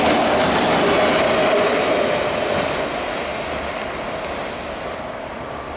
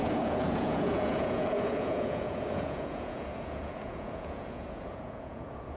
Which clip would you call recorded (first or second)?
first